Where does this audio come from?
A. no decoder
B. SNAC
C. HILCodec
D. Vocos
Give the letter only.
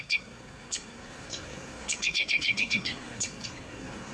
B